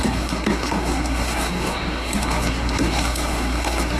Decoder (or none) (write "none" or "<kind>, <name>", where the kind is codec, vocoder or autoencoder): codec, SNAC